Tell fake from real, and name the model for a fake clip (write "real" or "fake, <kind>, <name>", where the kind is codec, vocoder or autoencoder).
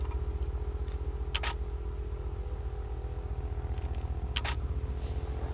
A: real